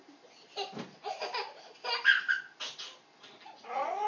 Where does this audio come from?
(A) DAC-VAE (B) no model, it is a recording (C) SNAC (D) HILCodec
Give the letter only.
B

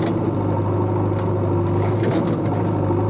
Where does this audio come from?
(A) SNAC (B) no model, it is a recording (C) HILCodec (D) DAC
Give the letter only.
B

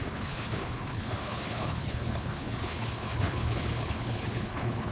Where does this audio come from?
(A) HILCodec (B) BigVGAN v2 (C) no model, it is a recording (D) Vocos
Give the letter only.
A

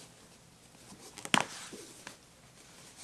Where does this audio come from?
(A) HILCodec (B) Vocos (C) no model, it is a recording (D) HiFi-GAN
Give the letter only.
C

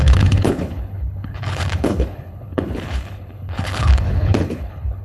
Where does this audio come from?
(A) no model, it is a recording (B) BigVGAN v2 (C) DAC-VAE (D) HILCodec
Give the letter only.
D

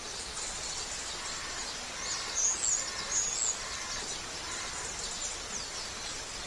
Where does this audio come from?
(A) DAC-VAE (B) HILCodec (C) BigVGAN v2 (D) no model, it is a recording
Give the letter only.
D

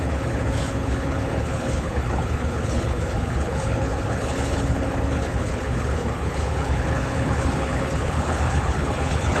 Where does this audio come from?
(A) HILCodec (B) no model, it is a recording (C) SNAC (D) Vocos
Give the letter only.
A